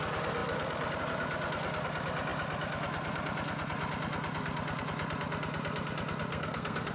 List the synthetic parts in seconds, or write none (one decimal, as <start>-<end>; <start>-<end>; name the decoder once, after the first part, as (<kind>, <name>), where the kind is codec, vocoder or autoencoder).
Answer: 6.3-6.9 (codec, SNAC)